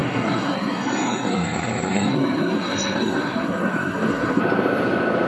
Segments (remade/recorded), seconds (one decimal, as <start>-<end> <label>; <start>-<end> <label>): 0.0-4.4 remade; 4.4-5.3 recorded